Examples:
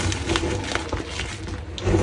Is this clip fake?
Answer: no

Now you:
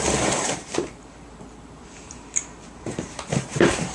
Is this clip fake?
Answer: yes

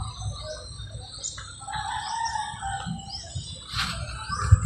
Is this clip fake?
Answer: no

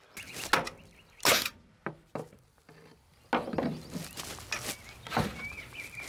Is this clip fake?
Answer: no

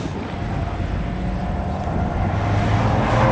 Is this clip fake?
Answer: no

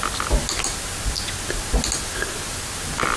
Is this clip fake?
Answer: no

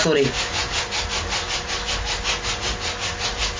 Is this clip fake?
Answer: no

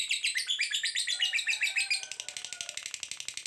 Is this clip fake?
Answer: no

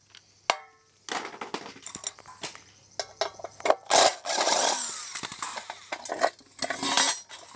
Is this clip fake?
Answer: no